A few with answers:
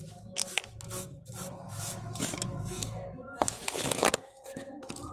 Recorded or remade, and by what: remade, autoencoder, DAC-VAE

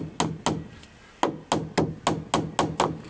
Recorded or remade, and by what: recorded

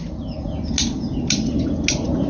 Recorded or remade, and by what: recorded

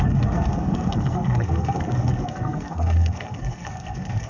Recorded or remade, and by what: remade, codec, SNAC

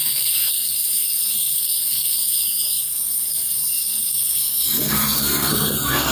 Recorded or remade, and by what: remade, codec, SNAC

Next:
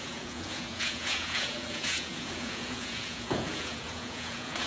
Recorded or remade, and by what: remade, vocoder, Vocos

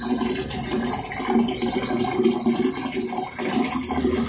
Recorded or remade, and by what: recorded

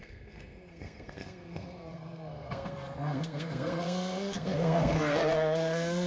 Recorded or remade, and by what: remade, codec, SNAC